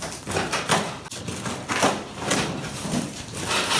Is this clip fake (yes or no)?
no